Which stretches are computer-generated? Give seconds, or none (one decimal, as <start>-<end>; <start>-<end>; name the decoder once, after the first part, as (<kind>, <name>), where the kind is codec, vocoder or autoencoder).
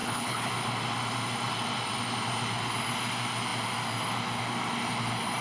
0.0-0.5 (codec, HILCodec)